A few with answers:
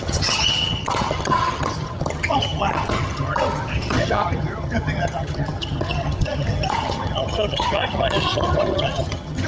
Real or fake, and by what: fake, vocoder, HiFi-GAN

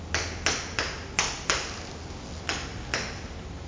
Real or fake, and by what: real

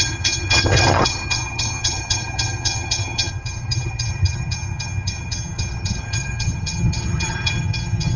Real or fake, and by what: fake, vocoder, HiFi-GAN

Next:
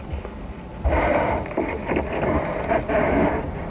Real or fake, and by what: real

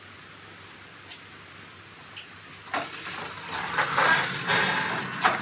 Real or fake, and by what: real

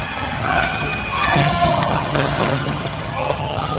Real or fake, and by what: fake, vocoder, HiFi-GAN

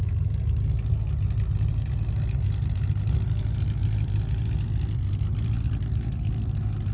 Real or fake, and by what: real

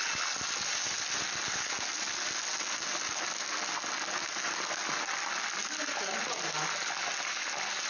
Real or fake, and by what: real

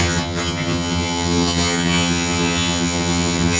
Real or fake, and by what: fake, vocoder, HiFi-GAN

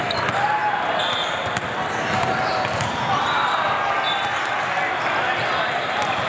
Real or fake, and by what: real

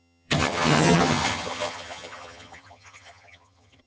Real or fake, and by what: fake, vocoder, HiFi-GAN